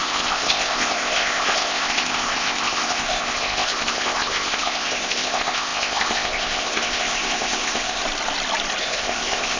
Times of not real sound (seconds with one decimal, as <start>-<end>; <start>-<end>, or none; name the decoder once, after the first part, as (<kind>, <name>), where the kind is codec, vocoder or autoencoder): 0.0-8.0 (codec, ZipCodec); 8.8-9.6